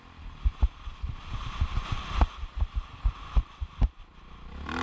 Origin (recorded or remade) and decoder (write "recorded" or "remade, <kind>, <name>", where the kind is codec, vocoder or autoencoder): recorded